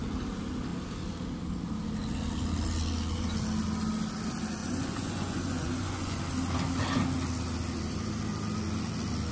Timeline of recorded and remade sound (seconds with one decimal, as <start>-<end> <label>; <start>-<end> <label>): 0.0-4.6 recorded; 4.6-6.2 remade; 6.2-9.3 recorded